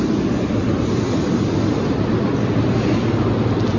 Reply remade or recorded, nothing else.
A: recorded